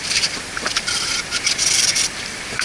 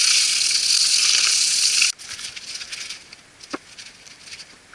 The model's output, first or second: first